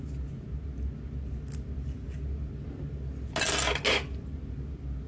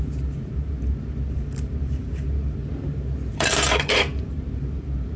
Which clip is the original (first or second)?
first